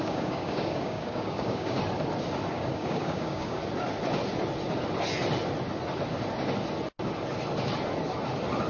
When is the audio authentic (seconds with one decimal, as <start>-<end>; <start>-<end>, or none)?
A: 1.8-2.5; 3.6-8.7